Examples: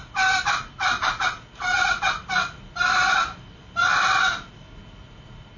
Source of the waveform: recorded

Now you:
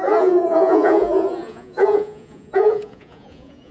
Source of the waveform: remade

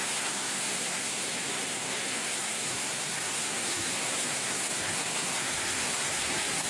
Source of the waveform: remade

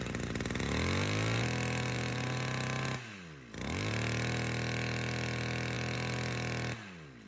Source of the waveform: recorded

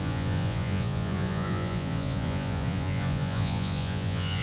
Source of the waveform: remade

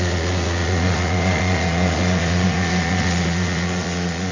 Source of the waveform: remade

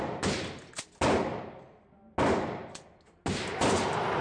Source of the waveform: recorded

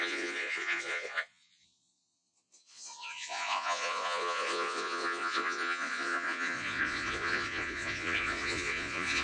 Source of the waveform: remade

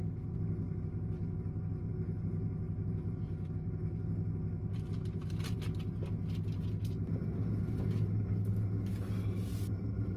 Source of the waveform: recorded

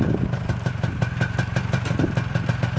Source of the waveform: recorded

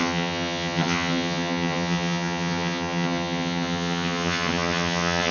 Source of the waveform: remade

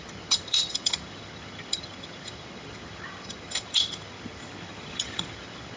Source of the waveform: remade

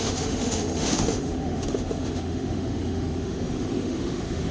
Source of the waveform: remade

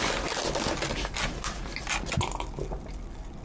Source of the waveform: recorded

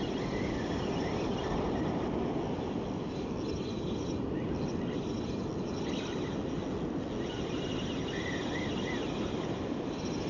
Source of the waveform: recorded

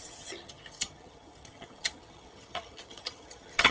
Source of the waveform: remade